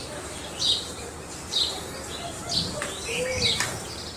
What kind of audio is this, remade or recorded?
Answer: remade